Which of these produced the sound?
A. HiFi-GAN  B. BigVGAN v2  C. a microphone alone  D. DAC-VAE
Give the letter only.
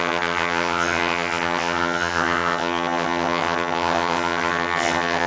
A